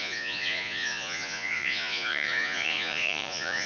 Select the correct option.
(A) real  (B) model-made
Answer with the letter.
B